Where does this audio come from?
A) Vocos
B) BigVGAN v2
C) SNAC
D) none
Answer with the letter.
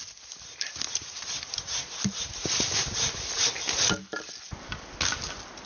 D